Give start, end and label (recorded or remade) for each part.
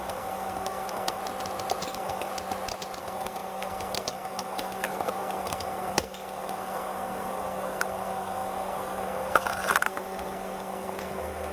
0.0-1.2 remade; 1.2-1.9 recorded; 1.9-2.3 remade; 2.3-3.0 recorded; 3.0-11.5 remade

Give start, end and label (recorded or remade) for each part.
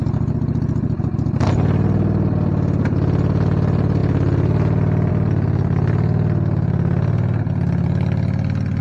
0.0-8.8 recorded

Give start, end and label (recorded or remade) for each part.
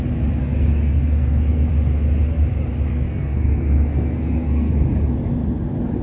0.0-0.4 recorded; 0.4-1.7 remade; 1.7-2.9 recorded; 2.9-4.7 remade; 4.7-6.0 recorded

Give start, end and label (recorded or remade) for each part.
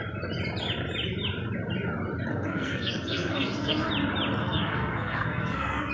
0.0-2.3 recorded; 2.3-3.9 remade; 3.9-4.4 recorded; 4.4-5.9 remade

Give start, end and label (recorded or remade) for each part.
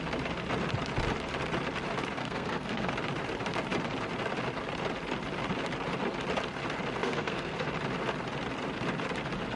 0.0-2.2 recorded; 2.2-2.9 remade; 2.9-7.0 recorded; 7.0-7.7 remade; 7.7-9.6 recorded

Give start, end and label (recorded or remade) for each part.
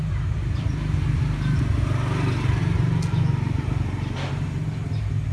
0.0-5.3 recorded